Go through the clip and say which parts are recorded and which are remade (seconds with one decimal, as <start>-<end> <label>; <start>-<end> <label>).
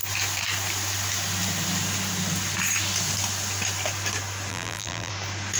0.0-4.5 recorded; 4.5-5.1 remade; 5.1-5.6 recorded